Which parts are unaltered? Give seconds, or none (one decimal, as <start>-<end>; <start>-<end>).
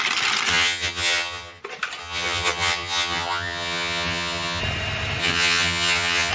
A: 0.0-0.5; 1.6-2.0; 4.6-5.2